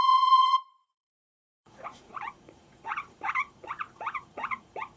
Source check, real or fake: fake